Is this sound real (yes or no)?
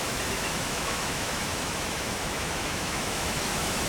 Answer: no